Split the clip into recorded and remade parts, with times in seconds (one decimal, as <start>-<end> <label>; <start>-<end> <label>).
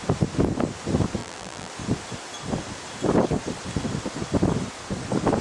0.0-1.2 recorded; 1.2-1.7 remade; 1.7-5.4 recorded